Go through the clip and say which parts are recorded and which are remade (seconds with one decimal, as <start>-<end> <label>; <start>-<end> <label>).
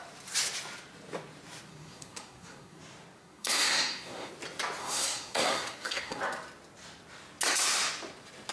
0.0-1.7 recorded; 1.7-2.8 remade; 2.8-3.2 recorded; 3.2-4.3 remade; 4.3-4.8 recorded; 4.8-6.2 remade; 6.2-8.5 recorded